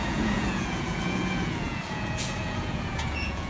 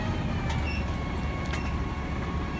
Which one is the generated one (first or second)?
first